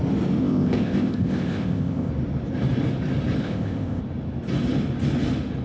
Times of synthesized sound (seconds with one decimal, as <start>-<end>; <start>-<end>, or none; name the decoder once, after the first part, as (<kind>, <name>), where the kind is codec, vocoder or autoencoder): 0.4-2.1 (codec, ZipCodec); 3.4-4.0